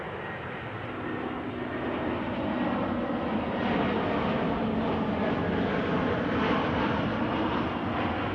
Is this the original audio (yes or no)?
yes